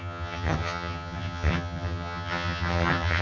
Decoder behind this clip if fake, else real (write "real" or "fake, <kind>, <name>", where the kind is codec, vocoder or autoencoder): fake, vocoder, HiFi-GAN